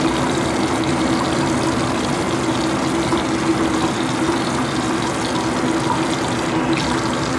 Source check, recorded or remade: recorded